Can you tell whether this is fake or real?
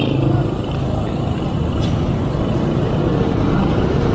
real